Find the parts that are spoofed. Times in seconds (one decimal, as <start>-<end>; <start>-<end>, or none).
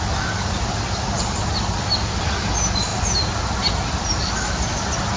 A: none